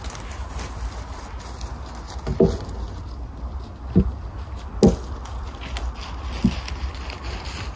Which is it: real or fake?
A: real